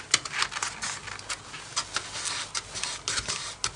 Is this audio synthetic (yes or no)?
no